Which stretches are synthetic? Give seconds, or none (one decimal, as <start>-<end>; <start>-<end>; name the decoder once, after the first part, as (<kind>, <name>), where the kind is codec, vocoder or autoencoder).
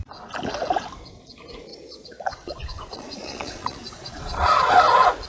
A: 1.7-4.7 (vocoder, Vocos)